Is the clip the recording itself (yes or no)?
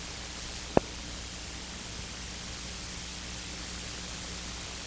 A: yes